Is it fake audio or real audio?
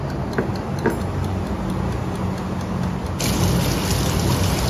real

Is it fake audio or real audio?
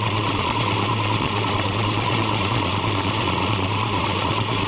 fake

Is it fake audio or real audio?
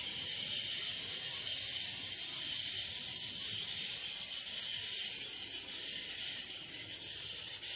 real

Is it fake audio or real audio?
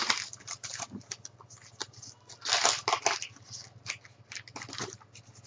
real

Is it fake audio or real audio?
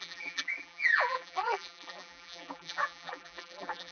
fake